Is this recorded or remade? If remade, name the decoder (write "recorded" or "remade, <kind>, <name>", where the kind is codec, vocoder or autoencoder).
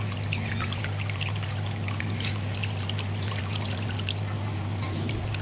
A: recorded